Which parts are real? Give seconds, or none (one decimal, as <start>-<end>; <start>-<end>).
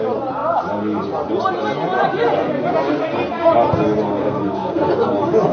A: 0.0-4.2; 4.9-5.5